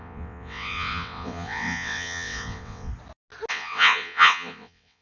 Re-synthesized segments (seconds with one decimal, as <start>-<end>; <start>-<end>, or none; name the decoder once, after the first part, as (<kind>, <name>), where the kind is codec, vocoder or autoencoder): 0.0-2.9 (vocoder, WaveNeXt); 3.5-5.0